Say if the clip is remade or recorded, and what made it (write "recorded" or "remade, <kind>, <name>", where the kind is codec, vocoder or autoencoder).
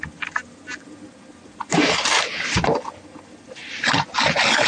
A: recorded